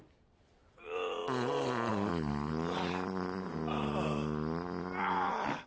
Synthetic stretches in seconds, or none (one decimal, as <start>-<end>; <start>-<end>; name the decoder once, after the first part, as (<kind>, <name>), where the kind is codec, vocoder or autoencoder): none